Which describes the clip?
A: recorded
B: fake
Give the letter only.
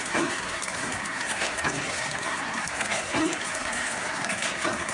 B